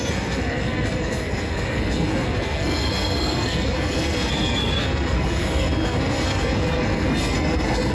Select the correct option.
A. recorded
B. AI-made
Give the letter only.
B